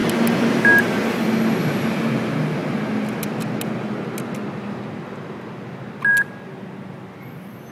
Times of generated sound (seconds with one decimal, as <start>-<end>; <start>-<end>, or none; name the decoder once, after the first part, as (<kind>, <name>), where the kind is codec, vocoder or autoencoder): none